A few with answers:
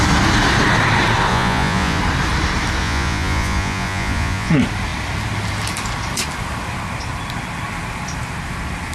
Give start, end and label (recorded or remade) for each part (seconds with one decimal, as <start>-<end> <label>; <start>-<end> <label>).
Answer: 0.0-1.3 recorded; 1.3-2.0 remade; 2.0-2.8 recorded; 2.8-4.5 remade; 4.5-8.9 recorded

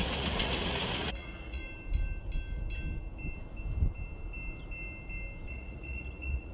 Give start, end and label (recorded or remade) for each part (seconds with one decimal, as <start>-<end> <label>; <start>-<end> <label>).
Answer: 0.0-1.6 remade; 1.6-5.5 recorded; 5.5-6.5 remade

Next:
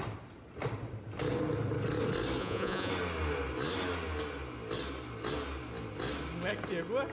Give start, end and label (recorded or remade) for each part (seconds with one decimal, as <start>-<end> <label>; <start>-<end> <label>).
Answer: 0.0-2.4 recorded; 2.4-2.9 remade; 2.9-7.1 recorded